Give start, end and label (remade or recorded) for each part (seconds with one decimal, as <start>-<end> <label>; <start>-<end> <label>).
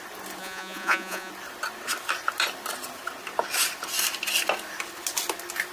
0.0-0.4 recorded; 0.4-1.3 remade; 1.3-5.7 recorded